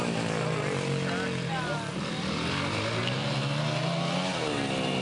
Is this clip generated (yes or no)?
no